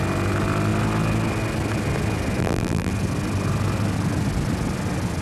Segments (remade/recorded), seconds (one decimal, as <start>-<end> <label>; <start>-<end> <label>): 0.0-2.4 recorded; 2.4-2.9 remade; 2.9-5.2 recorded